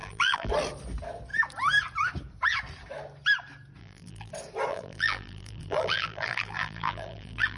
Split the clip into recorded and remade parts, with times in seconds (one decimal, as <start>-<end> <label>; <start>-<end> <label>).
0.0-0.5 remade; 0.5-3.8 recorded; 3.8-4.3 remade; 4.3-4.7 recorded; 4.7-7.6 remade